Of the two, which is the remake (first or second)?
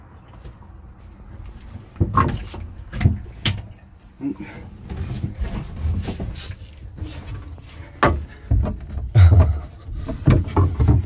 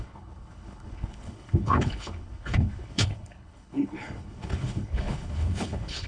second